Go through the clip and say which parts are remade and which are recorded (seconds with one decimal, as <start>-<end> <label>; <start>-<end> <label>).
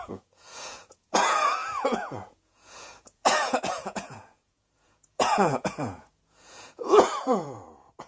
0.0-8.1 remade